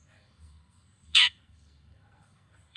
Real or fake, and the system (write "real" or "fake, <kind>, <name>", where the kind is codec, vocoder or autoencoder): fake, codec, SNAC